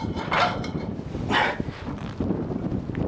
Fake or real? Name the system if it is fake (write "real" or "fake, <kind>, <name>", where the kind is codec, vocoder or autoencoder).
real